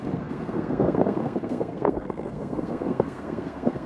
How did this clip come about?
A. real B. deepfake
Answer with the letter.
B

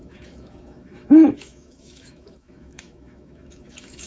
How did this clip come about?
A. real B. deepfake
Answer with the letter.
B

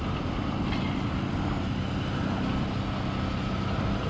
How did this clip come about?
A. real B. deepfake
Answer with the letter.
A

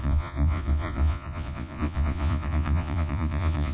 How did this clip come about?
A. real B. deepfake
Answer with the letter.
B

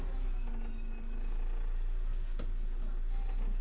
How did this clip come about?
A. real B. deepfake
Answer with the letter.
A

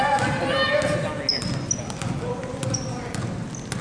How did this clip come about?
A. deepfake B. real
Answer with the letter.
B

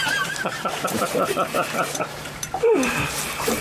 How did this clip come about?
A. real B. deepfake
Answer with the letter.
B